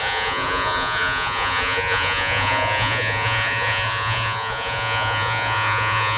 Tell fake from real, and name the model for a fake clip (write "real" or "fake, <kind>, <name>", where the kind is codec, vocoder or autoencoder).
fake, vocoder, Vocos